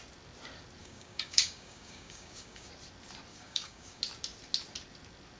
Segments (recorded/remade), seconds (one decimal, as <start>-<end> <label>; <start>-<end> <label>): 0.0-0.8 recorded; 0.8-2.7 remade; 2.7-3.3 recorded; 3.3-4.0 remade; 4.0-5.4 recorded